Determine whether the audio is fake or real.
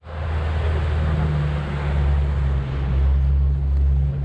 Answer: real